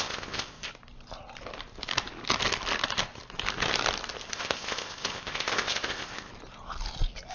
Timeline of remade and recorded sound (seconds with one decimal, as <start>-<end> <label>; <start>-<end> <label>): 0.0-0.7 remade; 0.7-4.3 recorded; 4.3-6.3 remade; 6.3-7.3 recorded

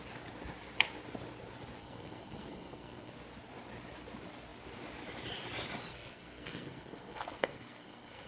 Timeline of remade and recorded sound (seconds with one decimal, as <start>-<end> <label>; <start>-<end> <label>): 0.0-1.8 recorded; 1.8-3.1 remade; 3.1-5.9 recorded; 5.9-8.3 remade

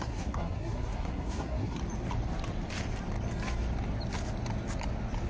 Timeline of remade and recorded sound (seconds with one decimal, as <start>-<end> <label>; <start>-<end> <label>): 0.0-1.8 remade; 1.8-5.3 recorded

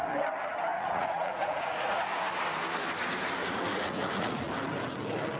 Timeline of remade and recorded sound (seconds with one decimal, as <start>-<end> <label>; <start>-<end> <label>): 0.0-0.7 recorded; 0.7-2.0 remade; 2.0-3.4 recorded; 3.4-4.5 remade; 4.5-5.4 recorded

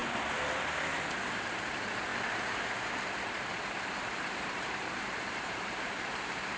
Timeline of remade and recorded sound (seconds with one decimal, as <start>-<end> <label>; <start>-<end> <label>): 0.0-1.2 recorded; 1.2-2.1 remade; 2.1-3.7 recorded; 3.7-6.6 remade

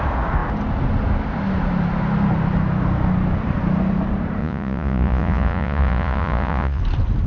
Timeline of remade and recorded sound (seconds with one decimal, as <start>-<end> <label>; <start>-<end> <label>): 0.0-4.4 recorded; 4.4-6.8 remade; 6.8-7.3 recorded

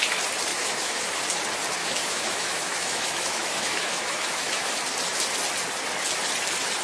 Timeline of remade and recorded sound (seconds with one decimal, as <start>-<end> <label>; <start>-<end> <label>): 0.0-0.5 recorded; 0.5-1.2 remade; 1.2-1.8 recorded; 1.8-4.8 remade; 4.8-6.8 recorded

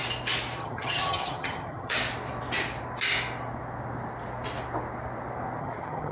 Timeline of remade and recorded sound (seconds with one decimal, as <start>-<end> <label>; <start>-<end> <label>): 0.0-0.6 recorded; 0.6-1.9 remade; 1.9-5.6 recorded; 5.6-6.1 remade